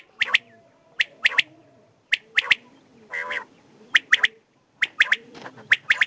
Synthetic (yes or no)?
yes